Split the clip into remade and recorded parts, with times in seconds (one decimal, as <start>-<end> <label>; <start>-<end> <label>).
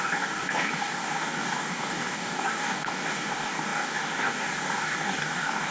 0.0-5.7 remade